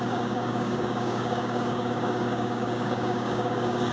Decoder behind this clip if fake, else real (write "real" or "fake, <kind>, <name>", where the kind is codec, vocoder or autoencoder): fake, codec, DAC